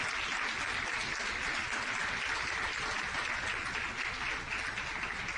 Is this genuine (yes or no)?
yes